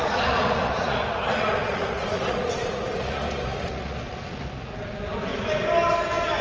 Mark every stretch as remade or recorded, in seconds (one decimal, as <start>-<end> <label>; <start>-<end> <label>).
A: 0.0-4.7 remade; 4.7-6.4 recorded